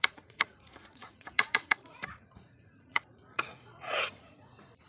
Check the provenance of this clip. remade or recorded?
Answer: remade